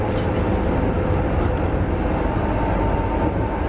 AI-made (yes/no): no